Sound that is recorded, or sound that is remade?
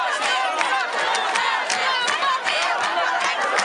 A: recorded